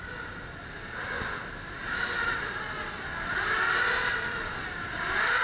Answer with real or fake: real